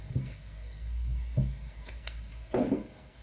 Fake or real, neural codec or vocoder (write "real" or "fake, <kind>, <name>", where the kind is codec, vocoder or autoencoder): fake, codec, SNAC